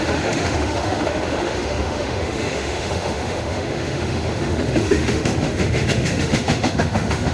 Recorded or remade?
remade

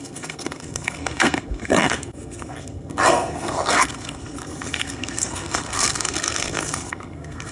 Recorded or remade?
remade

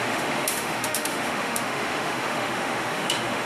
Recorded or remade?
remade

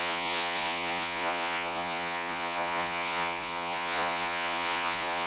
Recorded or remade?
remade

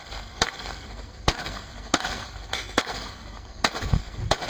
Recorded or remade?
remade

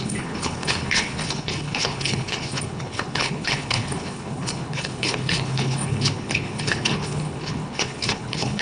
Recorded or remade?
remade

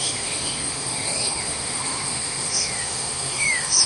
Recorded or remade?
remade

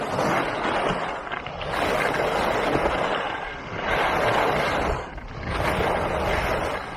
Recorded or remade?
recorded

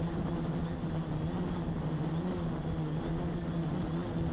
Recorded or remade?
recorded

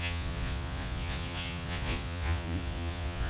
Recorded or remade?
remade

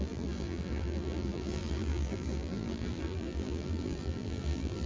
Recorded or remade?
remade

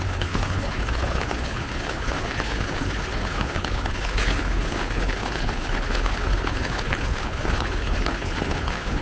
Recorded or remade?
remade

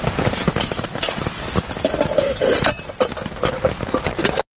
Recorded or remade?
recorded